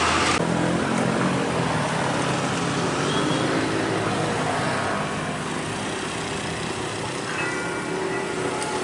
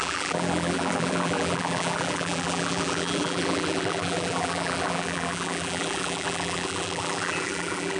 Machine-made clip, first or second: second